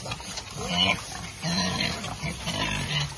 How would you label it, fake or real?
real